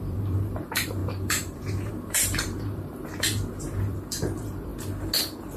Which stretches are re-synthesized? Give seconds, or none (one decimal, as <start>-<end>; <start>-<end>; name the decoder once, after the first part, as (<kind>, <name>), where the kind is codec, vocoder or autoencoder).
0.0-4.7 (vocoder, BigVGAN v2)